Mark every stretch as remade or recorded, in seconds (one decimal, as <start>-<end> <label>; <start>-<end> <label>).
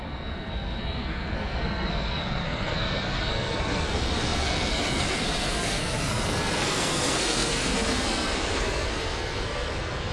0.0-10.1 remade